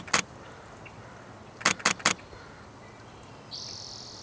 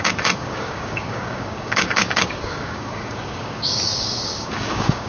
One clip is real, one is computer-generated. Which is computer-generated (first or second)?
second